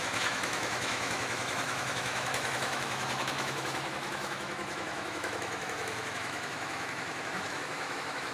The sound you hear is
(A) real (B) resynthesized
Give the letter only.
B